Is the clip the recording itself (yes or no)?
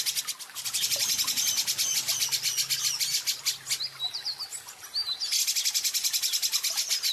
yes